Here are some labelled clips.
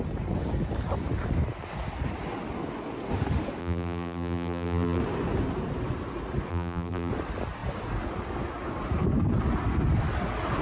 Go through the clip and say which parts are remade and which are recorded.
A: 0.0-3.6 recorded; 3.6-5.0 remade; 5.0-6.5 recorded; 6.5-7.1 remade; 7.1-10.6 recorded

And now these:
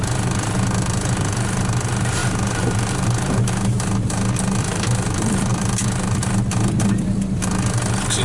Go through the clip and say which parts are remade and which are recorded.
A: 0.0-2.2 remade; 2.2-4.6 recorded; 4.6-8.2 remade

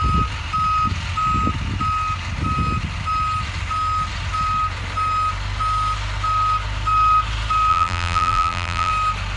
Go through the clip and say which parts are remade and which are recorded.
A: 0.0-7.7 recorded; 7.7-8.9 remade; 8.9-9.4 recorded

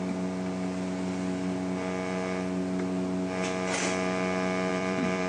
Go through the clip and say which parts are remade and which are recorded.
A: 0.0-4.7 recorded; 4.7-5.3 remade

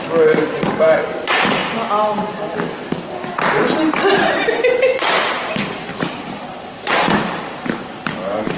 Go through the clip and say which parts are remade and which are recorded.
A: 0.0-1.6 remade; 1.6-5.5 recorded; 5.5-5.9 remade; 5.9-6.6 recorded; 6.6-8.6 remade

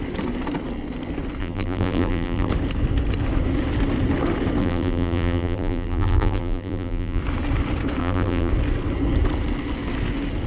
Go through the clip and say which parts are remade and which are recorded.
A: 0.0-1.4 recorded; 1.4-2.5 remade; 2.5-4.6 recorded; 4.6-7.2 remade; 7.2-8.0 recorded; 8.0-8.5 remade; 8.5-10.5 recorded

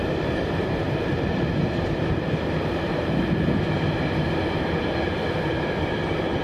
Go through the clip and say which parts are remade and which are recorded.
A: 0.0-3.0 remade; 3.0-6.4 recorded